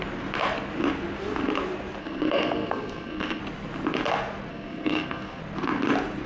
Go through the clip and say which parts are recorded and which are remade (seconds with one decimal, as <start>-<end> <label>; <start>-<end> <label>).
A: 0.0-2.0 recorded; 2.0-3.4 remade; 3.4-4.5 recorded; 4.5-5.4 remade; 5.4-6.3 recorded